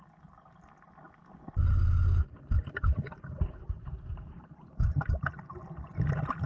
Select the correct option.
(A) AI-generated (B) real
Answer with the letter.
B